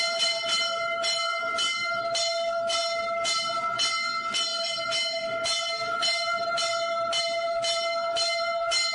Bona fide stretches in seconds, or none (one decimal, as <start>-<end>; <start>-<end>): 0.0-8.9